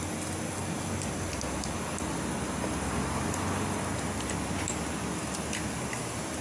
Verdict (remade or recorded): recorded